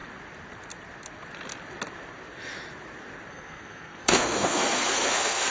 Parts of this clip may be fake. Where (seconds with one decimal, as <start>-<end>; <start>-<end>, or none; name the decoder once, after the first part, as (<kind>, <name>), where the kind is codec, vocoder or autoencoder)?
3.3-5.5 (codec, SNAC)